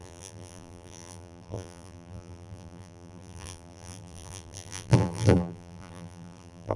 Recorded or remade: remade